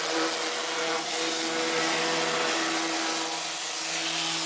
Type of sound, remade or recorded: recorded